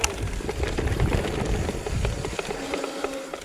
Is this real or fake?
real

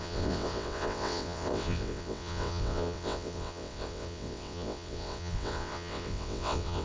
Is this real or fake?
fake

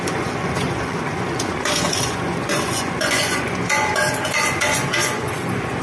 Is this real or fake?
fake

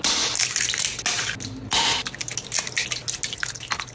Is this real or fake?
real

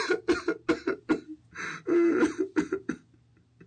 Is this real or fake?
real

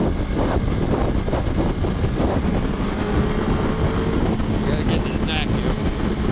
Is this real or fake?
real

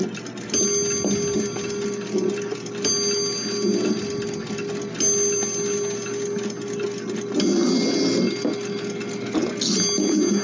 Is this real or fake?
real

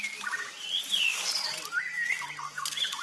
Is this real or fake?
real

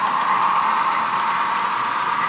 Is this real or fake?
real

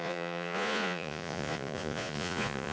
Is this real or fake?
fake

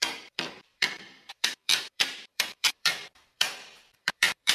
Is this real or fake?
fake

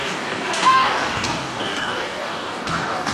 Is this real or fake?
fake